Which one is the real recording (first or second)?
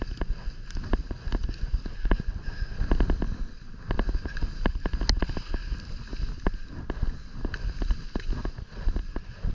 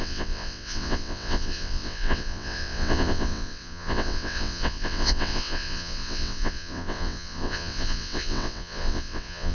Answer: first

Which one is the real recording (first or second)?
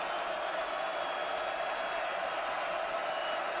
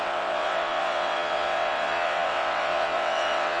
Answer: first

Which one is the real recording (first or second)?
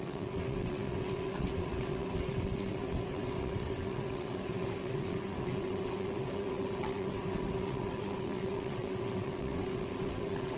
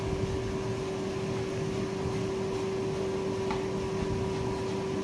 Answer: second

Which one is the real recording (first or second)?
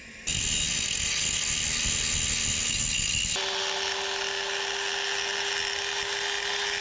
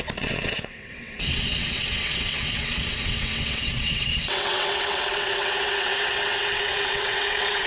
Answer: first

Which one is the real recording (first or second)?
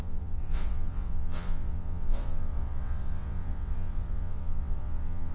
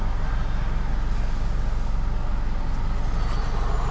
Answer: second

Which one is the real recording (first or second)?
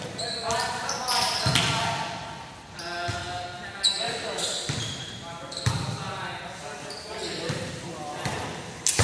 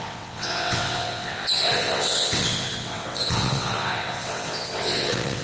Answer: first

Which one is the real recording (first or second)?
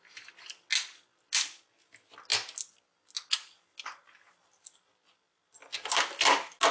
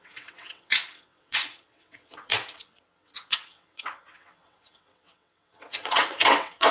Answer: first